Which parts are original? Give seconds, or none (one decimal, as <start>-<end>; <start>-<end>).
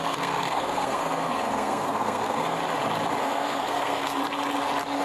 2.6-3.2; 4.2-5.0